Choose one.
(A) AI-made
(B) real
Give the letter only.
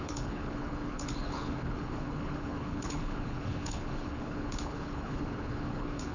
A